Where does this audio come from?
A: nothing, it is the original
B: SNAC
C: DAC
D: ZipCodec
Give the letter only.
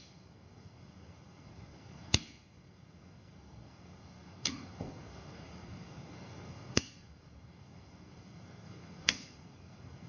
B